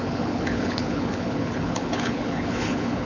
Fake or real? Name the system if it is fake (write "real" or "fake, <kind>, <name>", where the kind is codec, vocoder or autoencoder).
fake, codec, HILCodec